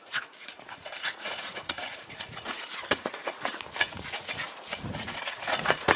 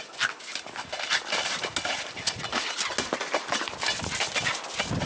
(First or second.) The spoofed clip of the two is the first